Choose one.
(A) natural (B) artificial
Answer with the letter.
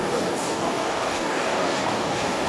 B